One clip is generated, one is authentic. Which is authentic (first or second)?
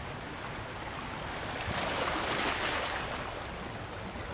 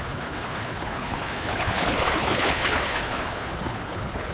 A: first